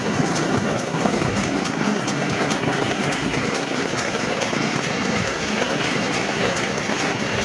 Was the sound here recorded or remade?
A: remade